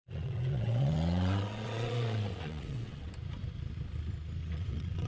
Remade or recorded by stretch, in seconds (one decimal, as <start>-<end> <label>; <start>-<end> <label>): 0.0-3.1 remade; 3.1-4.4 recorded; 4.4-5.1 remade